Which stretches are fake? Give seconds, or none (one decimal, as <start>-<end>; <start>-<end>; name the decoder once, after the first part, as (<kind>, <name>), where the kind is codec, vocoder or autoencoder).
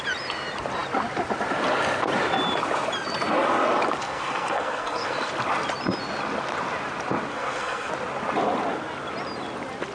4.0-5.3 (codec, SNAC); 7.3-7.9